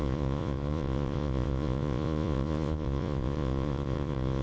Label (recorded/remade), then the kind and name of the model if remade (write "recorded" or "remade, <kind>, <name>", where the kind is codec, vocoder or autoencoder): remade, vocoder, Vocos